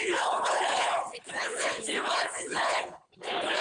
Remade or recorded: remade